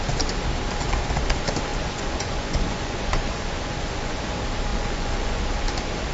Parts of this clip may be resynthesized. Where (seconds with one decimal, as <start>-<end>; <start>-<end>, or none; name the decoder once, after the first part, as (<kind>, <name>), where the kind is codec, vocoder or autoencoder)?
1.7-4.2 (vocoder, Vocos); 4.7-5.4